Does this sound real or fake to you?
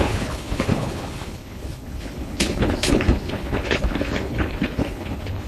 fake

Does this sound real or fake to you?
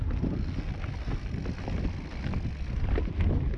real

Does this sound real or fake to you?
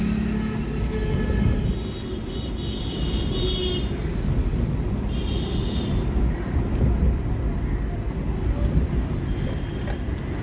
real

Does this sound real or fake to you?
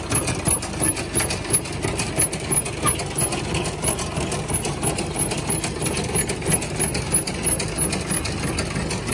real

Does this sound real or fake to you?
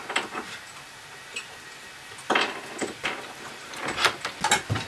real